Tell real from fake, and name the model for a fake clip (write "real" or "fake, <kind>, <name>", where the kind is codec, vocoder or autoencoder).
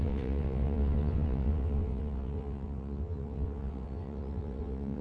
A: fake, vocoder, WaveNeXt